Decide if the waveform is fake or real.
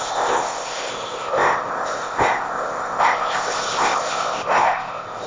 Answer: fake